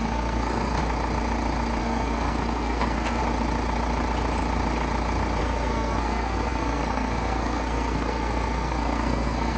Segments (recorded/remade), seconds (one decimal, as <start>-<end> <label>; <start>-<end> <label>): 0.0-0.8 remade; 0.8-1.8 recorded; 1.8-3.2 remade; 3.2-5.4 recorded; 5.4-9.6 remade